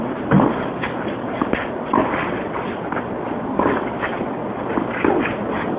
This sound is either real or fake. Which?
real